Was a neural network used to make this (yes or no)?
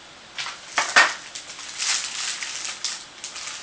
no